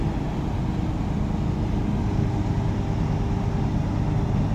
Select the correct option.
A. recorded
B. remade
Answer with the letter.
A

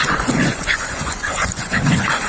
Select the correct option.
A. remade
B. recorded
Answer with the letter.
A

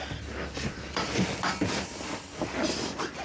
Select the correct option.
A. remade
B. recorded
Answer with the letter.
A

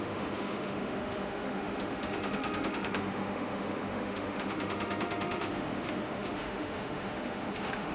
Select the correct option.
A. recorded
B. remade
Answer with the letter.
B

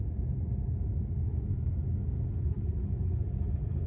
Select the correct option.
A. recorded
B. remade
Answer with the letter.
A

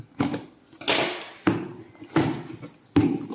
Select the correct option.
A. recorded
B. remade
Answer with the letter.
A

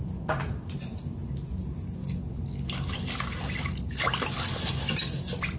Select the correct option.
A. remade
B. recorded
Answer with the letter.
B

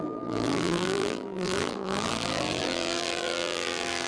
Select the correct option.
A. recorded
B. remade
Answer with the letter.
B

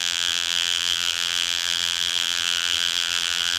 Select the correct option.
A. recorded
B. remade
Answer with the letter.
B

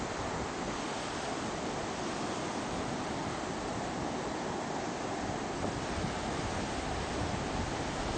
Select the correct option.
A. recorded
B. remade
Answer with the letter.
A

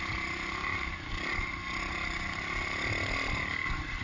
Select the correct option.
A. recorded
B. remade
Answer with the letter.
A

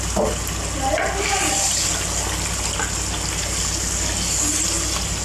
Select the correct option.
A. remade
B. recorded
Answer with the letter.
B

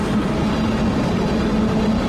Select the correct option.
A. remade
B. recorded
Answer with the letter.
B